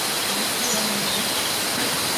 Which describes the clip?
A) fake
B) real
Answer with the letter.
B